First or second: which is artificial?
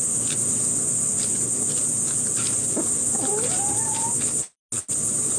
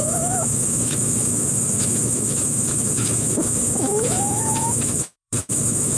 second